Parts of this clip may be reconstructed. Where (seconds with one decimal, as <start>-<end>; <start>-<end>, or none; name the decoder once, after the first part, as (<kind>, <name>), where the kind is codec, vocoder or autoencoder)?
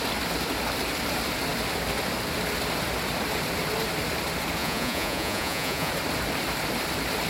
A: 4.6-5.9 (vocoder, Vocos)